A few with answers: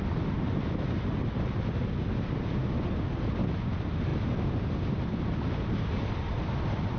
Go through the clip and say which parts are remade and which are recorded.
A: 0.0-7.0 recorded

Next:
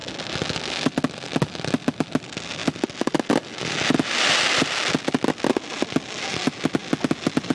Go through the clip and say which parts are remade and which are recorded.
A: 0.0-7.5 recorded

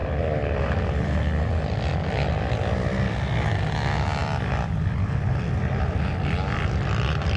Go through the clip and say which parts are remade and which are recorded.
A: 0.0-7.4 recorded

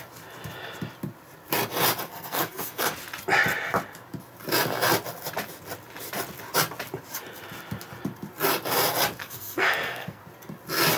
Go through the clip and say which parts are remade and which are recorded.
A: 0.0-2.1 recorded; 2.1-2.9 remade; 2.9-9.2 recorded; 9.2-10.2 remade; 10.2-11.0 recorded